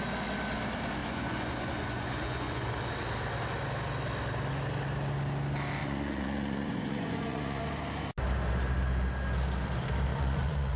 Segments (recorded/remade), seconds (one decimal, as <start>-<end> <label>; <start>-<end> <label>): 0.0-1.0 recorded; 1.0-2.7 remade; 2.7-5.8 recorded; 5.8-7.6 remade; 7.6-10.1 recorded; 10.1-10.8 remade